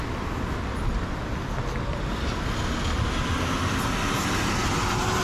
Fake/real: real